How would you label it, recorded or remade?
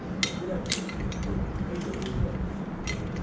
recorded